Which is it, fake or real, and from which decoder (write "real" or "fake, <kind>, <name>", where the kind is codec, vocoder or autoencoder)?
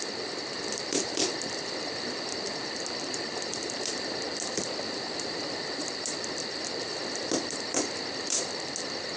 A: fake, vocoder, BigVGAN v2